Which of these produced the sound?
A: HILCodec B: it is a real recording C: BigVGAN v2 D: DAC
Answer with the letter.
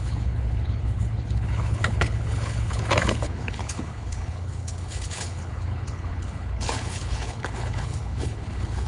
A